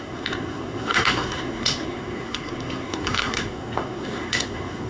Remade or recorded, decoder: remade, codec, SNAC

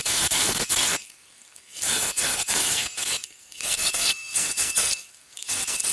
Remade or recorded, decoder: remade, codec, SNAC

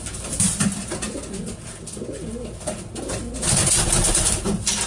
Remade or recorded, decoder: recorded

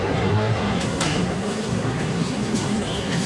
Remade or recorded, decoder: remade, codec, SNAC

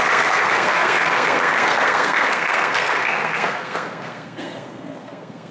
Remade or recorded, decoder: remade, codec, SNAC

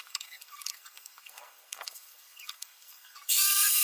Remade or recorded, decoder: remade, codec, SNAC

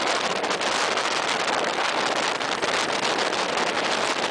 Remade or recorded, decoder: recorded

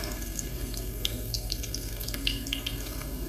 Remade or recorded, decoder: remade, codec, SNAC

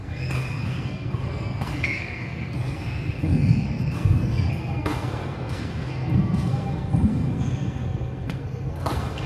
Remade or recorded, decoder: remade, codec, SNAC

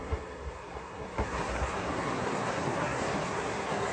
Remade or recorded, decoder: remade, codec, SNAC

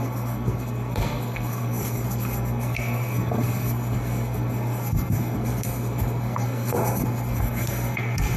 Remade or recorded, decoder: remade, codec, SNAC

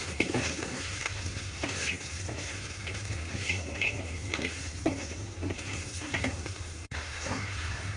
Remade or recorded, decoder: remade, codec, SNAC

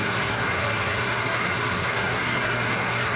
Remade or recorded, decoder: remade, codec, SNAC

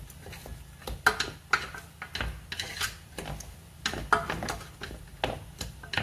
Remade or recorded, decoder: recorded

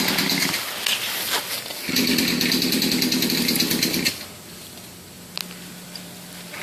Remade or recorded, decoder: recorded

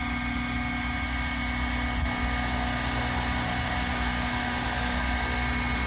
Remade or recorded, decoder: recorded